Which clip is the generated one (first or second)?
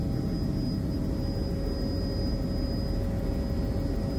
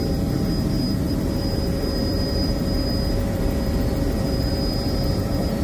second